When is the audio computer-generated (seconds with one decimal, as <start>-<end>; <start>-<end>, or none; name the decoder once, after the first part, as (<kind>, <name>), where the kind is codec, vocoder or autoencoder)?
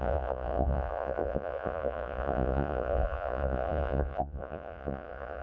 0.0-5.4 (vocoder, Vocos)